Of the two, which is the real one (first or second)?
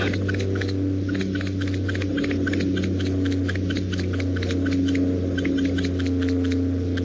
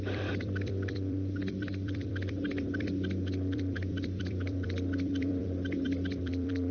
first